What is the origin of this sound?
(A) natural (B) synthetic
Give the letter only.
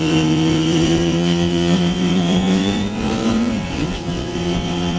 B